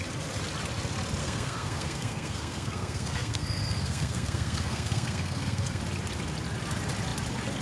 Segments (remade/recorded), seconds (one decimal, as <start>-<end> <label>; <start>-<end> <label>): 0.0-1.2 recorded; 1.2-5.8 remade; 5.8-7.6 recorded